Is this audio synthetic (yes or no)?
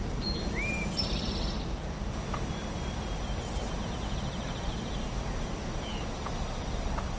no